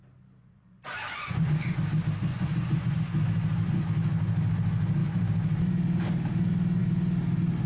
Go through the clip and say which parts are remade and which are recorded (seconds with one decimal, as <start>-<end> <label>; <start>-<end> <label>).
0.0-0.4 recorded; 0.4-1.8 remade; 1.8-2.3 recorded; 2.3-3.0 remade; 3.0-7.7 recorded